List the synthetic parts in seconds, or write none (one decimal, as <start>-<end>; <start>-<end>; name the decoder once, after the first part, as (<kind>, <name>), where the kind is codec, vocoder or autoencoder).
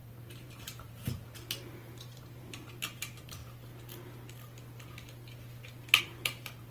0.0-3.4 (vocoder, BigVGAN v2); 6.0-6.7